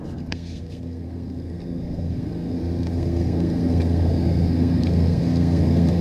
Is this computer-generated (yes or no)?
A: yes